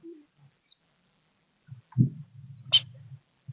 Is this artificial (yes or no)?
no